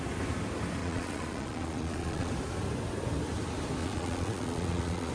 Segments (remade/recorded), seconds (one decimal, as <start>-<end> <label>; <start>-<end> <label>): 0.0-0.8 recorded; 0.8-2.3 remade; 2.3-3.8 recorded; 3.8-5.1 remade